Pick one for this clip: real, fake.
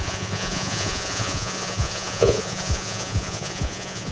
fake